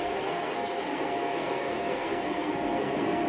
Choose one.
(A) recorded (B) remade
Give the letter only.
B